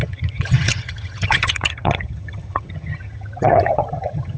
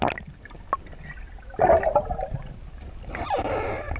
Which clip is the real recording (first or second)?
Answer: second